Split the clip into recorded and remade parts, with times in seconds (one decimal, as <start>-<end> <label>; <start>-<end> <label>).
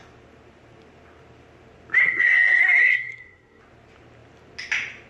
0.0-2.0 recorded; 2.0-3.6 remade; 3.6-5.1 recorded